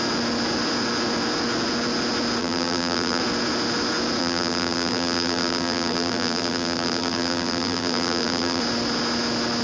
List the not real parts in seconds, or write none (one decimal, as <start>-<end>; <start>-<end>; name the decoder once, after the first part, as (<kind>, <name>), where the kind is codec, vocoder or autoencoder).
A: 2.4-3.2 (vocoder, BigVGAN v2); 4.2-8.6